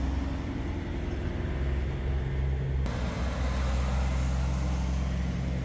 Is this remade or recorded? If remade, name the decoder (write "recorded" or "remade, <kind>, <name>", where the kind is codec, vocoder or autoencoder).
recorded